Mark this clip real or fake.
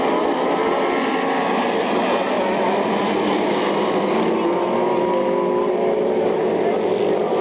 real